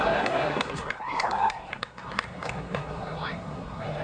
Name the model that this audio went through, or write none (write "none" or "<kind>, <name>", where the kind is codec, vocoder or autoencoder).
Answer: codec, SNAC